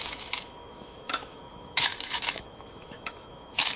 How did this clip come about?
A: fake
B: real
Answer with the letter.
A